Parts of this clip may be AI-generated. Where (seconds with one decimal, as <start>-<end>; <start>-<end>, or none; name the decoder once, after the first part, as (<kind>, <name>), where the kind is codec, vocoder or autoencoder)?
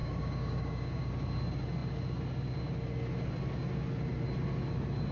0.0-1.1 (codec, DAC)